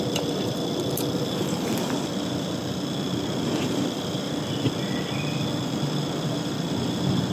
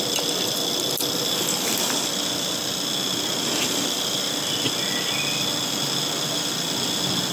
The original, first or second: second